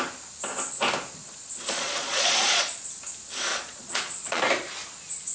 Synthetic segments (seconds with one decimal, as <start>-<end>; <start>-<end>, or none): 1.2-2.9; 3.5-4.4